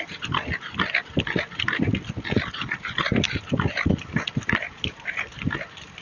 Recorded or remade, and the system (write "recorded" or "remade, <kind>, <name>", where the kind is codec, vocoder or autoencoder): recorded